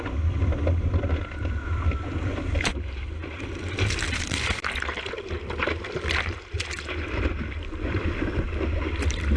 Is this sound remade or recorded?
recorded